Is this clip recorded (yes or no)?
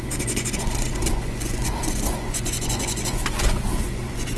no